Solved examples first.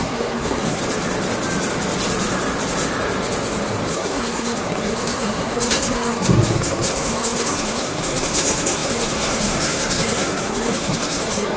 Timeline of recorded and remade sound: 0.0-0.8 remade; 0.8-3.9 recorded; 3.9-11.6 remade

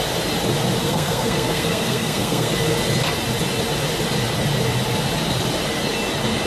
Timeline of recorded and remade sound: 0.0-0.8 recorded; 0.8-2.5 remade; 2.5-6.5 recorded